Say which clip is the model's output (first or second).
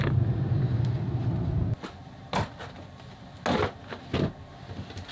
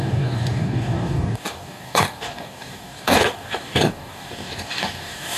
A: second